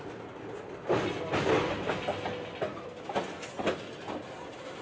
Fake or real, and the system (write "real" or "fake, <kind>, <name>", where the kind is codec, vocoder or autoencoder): real